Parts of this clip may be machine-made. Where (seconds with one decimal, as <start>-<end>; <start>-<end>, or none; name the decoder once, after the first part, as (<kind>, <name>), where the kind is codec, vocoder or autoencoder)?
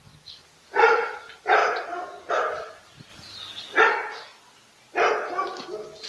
0.0-3.1 (vocoder, BigVGAN v2); 3.8-4.3